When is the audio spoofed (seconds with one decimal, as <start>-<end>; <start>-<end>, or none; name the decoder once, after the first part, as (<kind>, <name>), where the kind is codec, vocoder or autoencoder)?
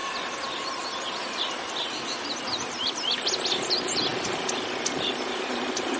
none